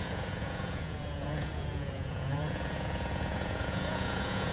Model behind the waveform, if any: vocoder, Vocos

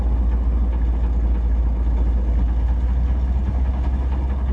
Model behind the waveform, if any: none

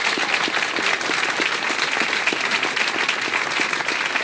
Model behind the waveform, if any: none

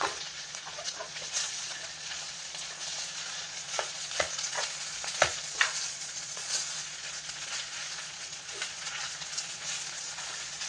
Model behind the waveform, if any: vocoder, Vocos